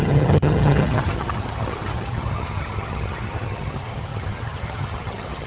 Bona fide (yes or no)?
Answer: no